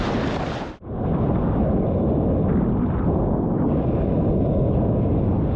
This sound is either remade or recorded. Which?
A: recorded